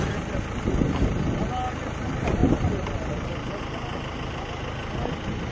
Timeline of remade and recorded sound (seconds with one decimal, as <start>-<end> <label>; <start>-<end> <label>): 0.0-2.4 recorded; 2.4-3.6 remade; 3.6-5.5 recorded